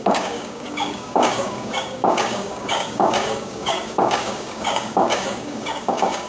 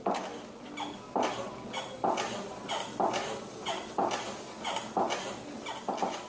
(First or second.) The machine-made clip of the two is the first